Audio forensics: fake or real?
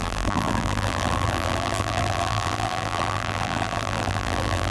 fake